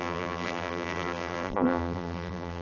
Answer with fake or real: fake